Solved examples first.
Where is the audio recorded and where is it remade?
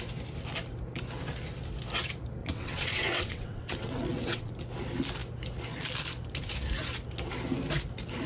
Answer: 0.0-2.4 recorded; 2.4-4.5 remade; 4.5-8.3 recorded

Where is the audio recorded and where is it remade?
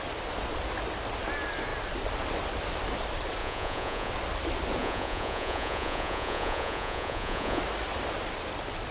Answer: 0.0-3.4 recorded; 3.4-4.1 remade; 4.1-4.8 recorded; 4.8-7.6 remade; 7.6-8.9 recorded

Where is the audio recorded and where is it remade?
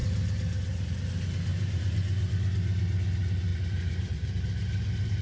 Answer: 0.0-1.5 recorded; 1.5-2.3 remade; 2.3-3.5 recorded; 3.5-4.4 remade; 4.4-5.2 recorded